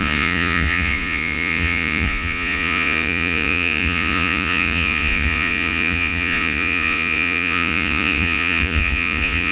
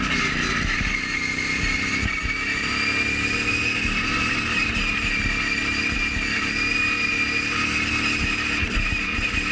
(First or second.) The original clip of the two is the second